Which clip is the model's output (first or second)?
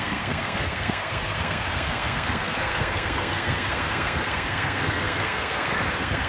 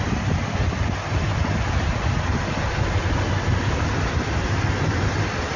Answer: first